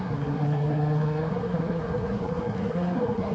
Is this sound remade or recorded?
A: remade